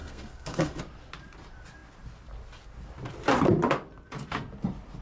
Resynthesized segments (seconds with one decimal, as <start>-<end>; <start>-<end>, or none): 0.0-0.8